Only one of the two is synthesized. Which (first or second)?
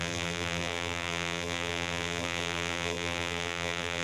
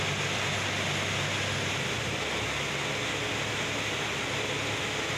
first